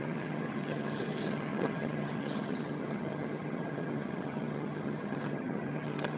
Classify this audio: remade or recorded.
remade